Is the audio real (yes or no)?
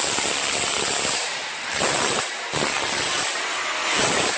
yes